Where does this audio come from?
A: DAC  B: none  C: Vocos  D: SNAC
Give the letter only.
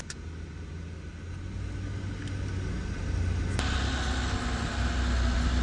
B